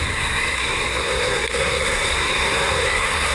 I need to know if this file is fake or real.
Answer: fake